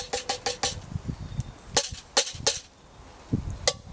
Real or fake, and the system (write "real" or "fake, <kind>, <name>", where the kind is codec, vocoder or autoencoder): real